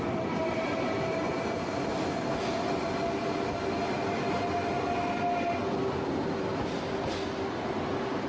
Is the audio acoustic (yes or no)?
yes